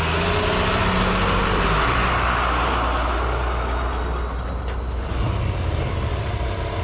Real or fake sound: real